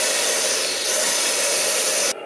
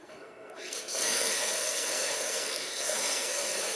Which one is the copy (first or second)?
second